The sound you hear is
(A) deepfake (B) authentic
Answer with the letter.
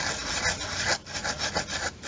A